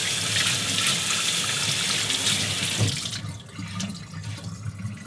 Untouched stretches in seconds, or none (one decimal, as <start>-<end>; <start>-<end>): 0.0-5.1